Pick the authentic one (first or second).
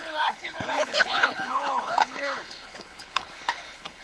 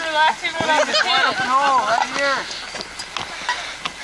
second